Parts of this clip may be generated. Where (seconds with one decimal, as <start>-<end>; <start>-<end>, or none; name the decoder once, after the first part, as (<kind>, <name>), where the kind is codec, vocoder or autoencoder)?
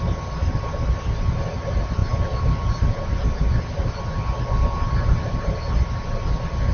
none